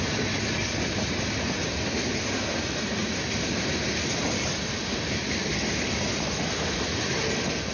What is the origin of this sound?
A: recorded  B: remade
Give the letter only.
A